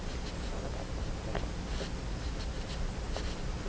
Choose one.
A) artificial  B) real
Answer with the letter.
B